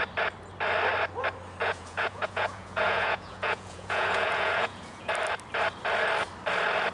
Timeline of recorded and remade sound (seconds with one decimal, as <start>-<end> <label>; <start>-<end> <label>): 0.0-1.6 recorded; 1.6-5.1 remade; 5.1-6.9 recorded